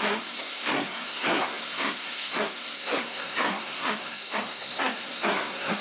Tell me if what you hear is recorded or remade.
remade